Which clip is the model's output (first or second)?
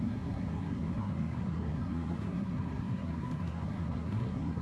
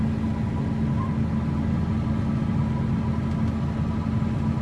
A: first